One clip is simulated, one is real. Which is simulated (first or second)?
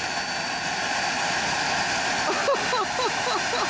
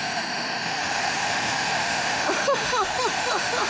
second